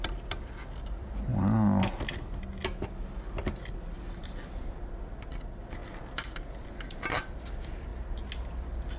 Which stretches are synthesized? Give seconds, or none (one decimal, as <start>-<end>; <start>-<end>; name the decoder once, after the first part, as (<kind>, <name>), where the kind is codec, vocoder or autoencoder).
0.0-1.3 (vocoder, BigVGAN v2); 2.4-7.9; 8.5-9.0